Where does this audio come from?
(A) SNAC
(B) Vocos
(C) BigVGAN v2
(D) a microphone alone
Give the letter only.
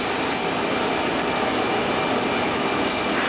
D